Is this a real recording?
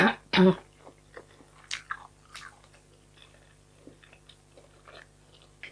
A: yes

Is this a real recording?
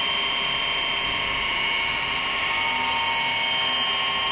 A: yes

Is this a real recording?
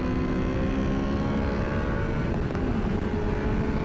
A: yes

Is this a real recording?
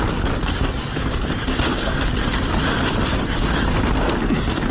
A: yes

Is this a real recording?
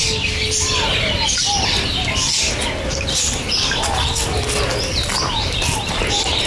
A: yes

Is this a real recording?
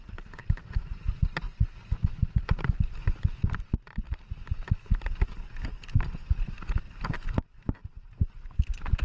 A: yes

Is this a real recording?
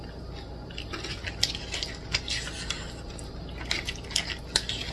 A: yes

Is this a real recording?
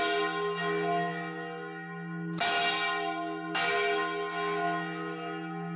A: yes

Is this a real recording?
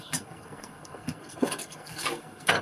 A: no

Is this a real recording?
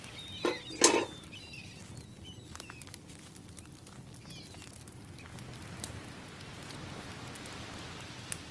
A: yes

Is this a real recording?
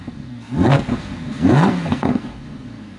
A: no